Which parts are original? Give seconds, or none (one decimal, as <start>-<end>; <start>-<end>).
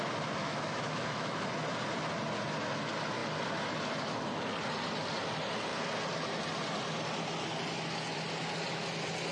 0.0-0.4; 1.5-9.3